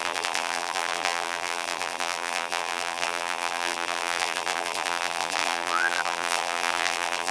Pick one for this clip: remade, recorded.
remade